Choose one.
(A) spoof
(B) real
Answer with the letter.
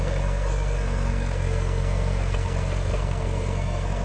A